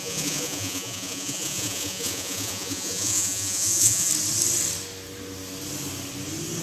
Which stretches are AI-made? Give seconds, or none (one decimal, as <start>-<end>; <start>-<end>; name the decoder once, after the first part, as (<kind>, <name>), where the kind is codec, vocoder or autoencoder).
0.0-4.1 (vocoder, Vocos)